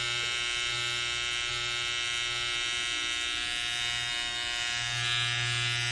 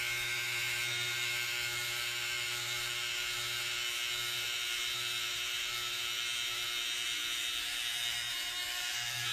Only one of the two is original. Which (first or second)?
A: first